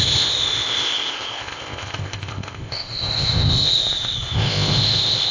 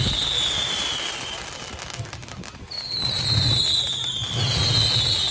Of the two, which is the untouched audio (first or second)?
second